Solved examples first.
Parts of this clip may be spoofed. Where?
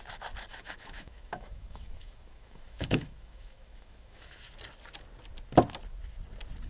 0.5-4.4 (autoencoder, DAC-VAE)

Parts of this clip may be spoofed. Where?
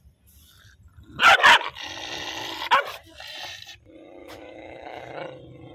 4.2-5.0 (autoencoder, DAC-VAE)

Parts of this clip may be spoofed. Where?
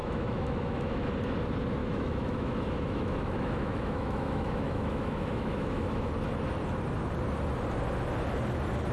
0.0-1.1 (autoencoder, DAC-VAE); 1.8-6.1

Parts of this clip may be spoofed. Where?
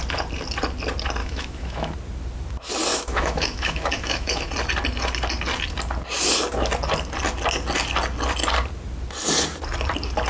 1.2-1.9 (autoencoder, DAC-VAE); 2.9-4.5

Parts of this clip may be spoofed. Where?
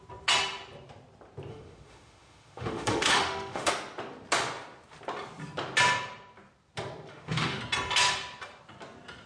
1.5-3.7 (autoencoder, DAC-VAE); 7.1-7.6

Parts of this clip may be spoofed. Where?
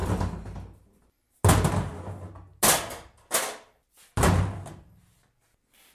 none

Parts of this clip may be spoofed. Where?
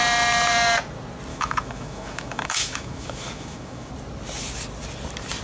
1.3-3.9 (autoencoder, DAC-VAE)